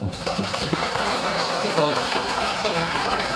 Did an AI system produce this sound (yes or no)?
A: yes